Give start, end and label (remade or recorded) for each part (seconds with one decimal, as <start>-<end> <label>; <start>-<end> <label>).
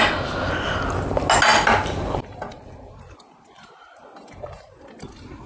0.0-1.5 recorded; 1.5-4.8 remade; 4.8-5.5 recorded